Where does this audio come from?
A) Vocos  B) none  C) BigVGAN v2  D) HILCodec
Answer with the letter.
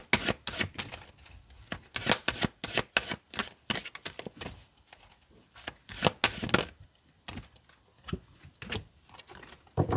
B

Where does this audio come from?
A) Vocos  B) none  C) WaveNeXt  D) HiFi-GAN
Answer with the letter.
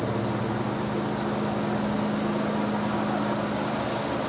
B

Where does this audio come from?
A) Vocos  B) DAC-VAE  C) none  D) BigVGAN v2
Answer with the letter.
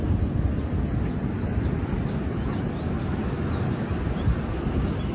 C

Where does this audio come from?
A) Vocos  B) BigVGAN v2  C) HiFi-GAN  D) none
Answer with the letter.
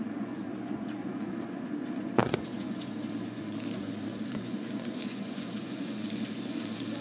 A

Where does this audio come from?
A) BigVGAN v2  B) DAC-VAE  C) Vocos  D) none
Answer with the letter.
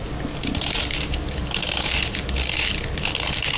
D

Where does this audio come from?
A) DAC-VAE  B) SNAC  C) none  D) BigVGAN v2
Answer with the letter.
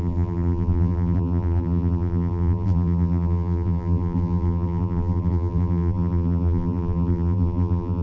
D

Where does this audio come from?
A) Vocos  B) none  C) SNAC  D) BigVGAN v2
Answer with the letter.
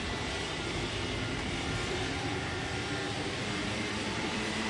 D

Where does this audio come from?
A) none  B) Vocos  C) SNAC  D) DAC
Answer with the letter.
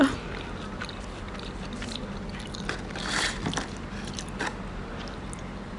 A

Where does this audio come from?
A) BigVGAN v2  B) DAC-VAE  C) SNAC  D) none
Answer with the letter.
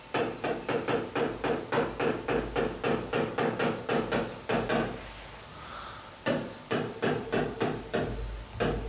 D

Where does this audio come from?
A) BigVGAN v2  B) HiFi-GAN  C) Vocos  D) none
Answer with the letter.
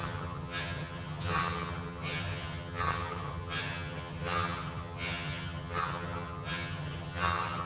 B